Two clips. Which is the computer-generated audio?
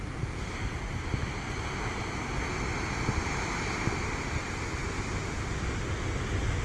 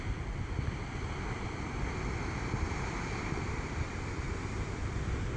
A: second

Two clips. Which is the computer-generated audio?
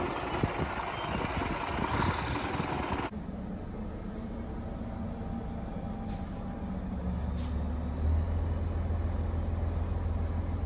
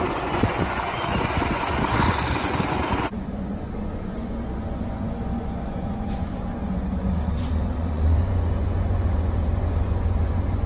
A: second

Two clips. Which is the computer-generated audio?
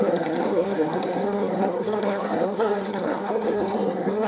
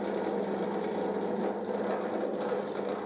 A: first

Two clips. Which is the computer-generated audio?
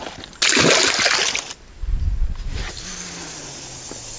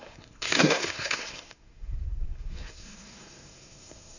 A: second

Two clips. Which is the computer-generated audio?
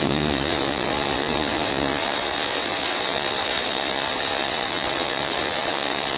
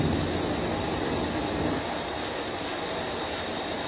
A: first